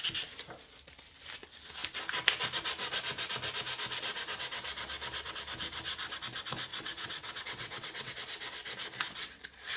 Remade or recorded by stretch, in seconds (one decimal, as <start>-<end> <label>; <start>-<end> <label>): 0.0-6.7 recorded; 6.7-8.1 remade; 8.1-9.8 recorded